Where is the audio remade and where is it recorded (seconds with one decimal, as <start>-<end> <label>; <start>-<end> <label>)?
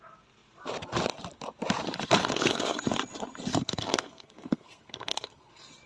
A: 0.0-2.2 recorded; 2.2-2.8 remade; 2.8-3.5 recorded; 3.5-5.5 remade; 5.5-5.9 recorded